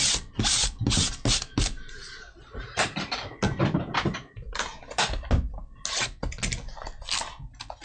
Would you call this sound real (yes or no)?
yes